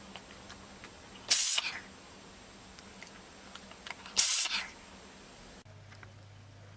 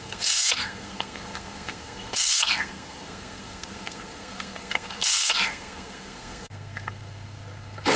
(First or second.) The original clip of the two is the first